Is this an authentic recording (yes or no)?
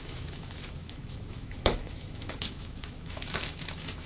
no